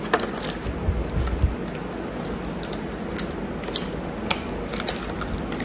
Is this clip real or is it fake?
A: real